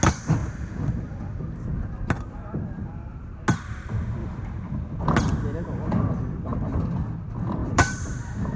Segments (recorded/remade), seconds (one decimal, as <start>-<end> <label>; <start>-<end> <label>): 0.0-0.4 recorded; 0.4-1.4 remade; 1.4-4.2 recorded; 4.2-5.0 remade; 5.0-7.6 recorded; 7.6-8.6 remade